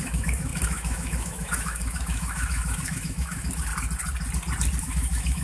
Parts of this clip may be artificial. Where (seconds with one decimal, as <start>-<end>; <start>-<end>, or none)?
0.0-3.7; 4.8-5.4